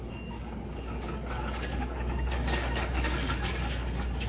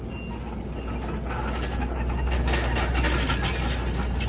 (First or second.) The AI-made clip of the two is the first